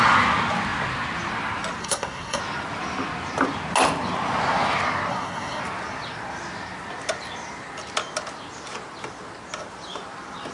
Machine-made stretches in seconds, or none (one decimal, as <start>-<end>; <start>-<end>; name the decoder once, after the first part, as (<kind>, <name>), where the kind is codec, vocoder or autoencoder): 1.8-2.4 (codec, SNAC); 5.1-5.6